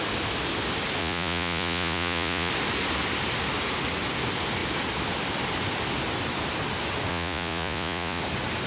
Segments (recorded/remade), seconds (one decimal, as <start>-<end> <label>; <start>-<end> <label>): 0.0-1.0 recorded; 1.0-2.5 remade; 2.5-7.1 recorded; 7.1-8.2 remade; 8.2-8.7 recorded